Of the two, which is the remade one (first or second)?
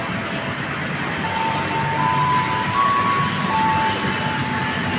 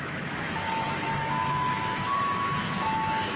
second